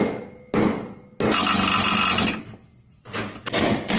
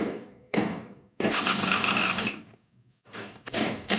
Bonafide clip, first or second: first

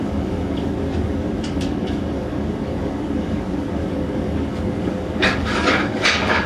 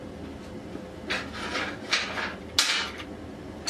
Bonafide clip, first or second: second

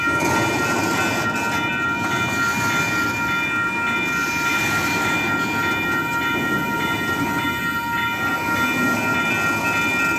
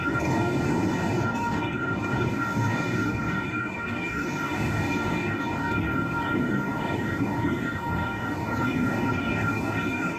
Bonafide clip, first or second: first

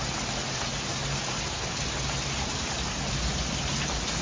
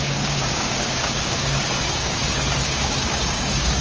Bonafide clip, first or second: first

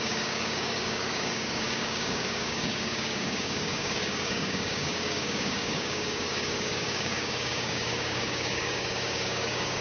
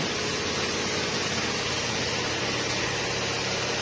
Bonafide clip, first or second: second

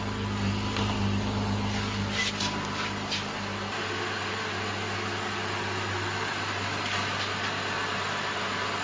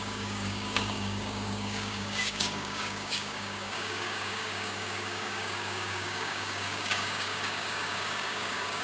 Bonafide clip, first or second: first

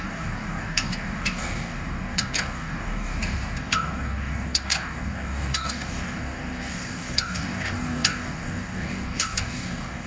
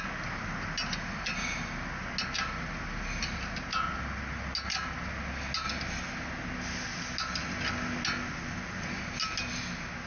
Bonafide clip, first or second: second